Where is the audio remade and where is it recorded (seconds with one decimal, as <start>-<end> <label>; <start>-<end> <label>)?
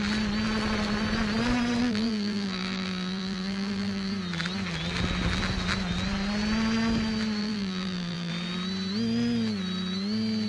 0.0-1.8 recorded; 1.8-4.1 remade; 4.1-7.4 recorded; 7.4-8.3 remade; 8.3-10.5 recorded